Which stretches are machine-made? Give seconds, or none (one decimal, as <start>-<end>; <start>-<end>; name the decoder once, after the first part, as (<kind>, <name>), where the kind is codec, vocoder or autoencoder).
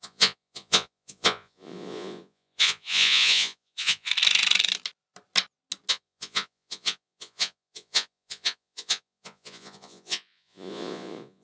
0.0-4.1 (vocoder, Vocos); 5.9-11.4